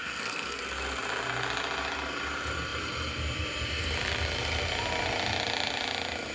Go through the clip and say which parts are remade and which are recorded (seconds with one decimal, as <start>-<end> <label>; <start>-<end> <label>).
0.0-0.6 remade; 0.6-6.3 recorded